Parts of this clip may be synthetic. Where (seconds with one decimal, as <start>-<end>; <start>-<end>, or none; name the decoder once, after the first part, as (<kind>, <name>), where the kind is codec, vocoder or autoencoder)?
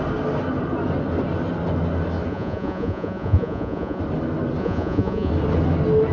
2.3-4.0 (vocoder, Vocos); 4.6-5.3